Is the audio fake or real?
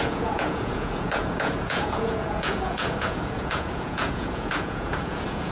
fake